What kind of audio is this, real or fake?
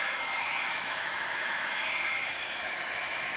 fake